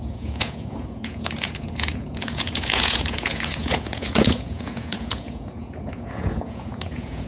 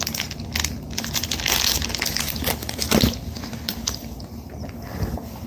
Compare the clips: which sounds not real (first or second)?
first